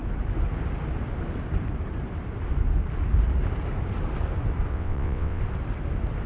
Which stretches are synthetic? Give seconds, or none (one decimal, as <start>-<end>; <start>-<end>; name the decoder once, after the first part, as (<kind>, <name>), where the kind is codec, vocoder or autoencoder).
4.7-5.4 (vocoder, WaveNeXt)